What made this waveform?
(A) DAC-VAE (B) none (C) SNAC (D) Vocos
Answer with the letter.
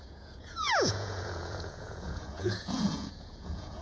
D